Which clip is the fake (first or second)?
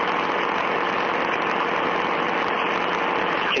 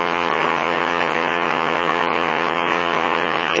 second